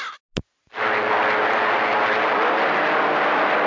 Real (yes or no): yes